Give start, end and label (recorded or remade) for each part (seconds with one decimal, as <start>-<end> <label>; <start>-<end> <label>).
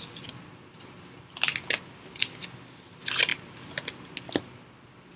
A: 0.0-5.2 recorded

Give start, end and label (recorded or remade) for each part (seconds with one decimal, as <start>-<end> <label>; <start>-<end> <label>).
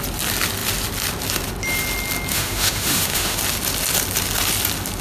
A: 0.0-2.3 recorded; 2.3-3.4 remade; 3.4-5.0 recorded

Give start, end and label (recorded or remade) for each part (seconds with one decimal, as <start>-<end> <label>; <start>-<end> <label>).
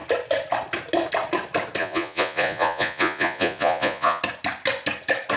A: 0.0-1.8 recorded; 1.8-4.2 remade; 4.2-5.4 recorded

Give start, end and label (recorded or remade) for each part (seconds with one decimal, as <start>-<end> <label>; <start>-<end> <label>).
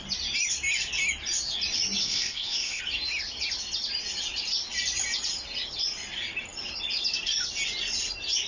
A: 0.0-2.0 recorded; 2.0-2.8 remade; 2.8-8.5 recorded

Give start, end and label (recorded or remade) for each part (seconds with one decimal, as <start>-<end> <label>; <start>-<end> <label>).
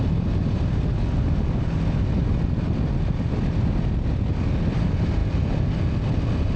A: 0.0-6.6 recorded